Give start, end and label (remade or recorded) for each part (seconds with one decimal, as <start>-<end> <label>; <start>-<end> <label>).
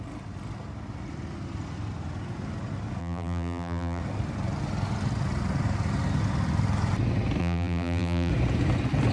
0.0-3.0 recorded; 3.0-4.0 remade; 4.0-7.4 recorded; 7.4-8.3 remade; 8.3-9.1 recorded